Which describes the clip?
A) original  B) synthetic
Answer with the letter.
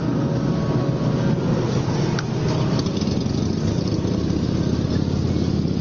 A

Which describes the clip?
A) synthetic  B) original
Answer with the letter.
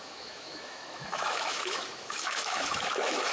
A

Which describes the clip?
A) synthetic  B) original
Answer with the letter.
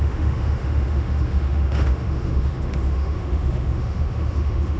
A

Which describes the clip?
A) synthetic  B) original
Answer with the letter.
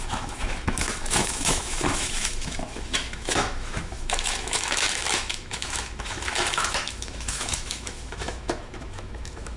A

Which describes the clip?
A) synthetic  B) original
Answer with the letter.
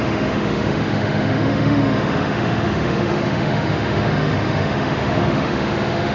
A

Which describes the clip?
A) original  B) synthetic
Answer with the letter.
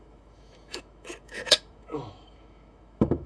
B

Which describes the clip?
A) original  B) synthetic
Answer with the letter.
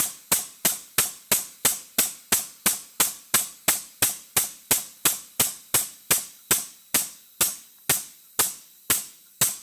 A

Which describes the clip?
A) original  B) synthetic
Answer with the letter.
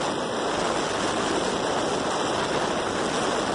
A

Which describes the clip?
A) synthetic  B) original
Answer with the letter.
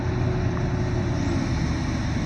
B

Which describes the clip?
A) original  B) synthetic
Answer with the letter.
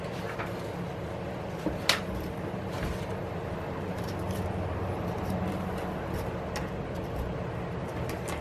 A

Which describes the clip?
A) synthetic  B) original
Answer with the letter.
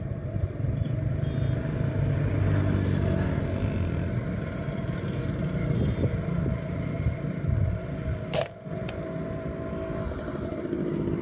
B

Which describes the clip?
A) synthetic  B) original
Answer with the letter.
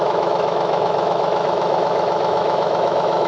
A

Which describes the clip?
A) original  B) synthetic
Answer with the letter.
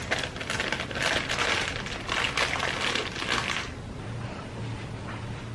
A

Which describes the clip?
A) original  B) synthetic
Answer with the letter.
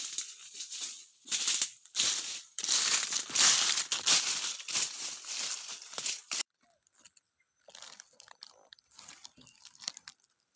A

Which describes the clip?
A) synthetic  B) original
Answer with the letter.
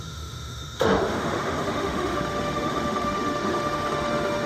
A